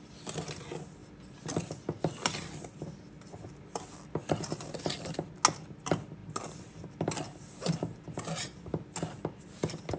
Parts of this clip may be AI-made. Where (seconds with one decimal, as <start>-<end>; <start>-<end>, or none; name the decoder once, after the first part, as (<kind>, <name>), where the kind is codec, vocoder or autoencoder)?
none